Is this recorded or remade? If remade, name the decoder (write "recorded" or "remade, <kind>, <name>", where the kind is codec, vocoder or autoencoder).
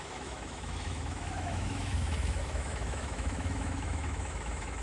remade, autoencoder, DAC-VAE